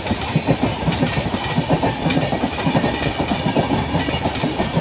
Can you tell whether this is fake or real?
real